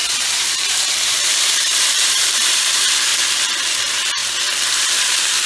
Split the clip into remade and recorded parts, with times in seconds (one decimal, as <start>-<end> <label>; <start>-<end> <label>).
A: 0.0-3.1 remade; 3.1-3.6 recorded; 3.6-4.2 remade; 4.2-4.7 recorded; 4.7-5.5 remade